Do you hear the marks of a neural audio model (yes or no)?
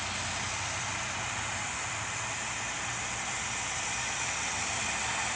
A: no